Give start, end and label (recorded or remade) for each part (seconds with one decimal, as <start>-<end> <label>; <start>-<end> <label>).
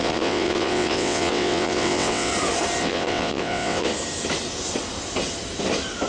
0.0-2.3 remade; 2.3-2.8 recorded; 2.8-3.9 remade; 3.9-6.1 recorded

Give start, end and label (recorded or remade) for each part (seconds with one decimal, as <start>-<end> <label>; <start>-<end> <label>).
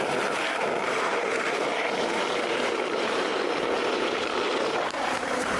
0.0-5.6 remade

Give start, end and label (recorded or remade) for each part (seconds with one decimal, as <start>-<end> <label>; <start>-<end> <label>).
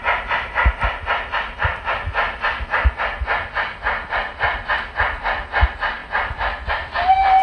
0.0-7.4 remade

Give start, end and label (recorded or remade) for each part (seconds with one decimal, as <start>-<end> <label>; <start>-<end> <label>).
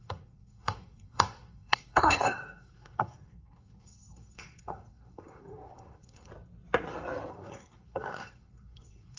0.0-6.3 remade; 6.3-7.3 recorded; 7.3-9.2 remade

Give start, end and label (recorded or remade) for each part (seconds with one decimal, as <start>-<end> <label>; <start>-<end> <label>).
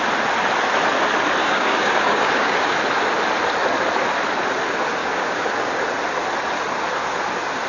0.0-1.4 recorded; 1.4-2.7 remade; 2.7-5.0 recorded; 5.0-5.8 remade; 5.8-7.7 recorded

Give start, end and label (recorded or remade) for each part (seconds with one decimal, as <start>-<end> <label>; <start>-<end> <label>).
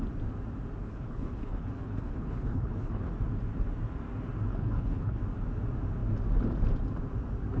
0.0-0.8 recorded; 0.8-3.1 remade; 3.1-4.5 recorded; 4.5-5.2 remade; 5.2-7.6 recorded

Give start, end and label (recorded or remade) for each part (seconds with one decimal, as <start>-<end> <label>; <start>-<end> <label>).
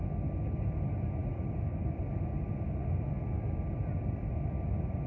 0.0-5.1 recorded